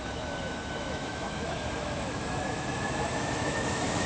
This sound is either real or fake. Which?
fake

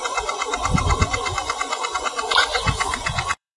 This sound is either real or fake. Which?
fake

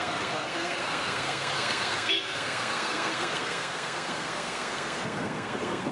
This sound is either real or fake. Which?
fake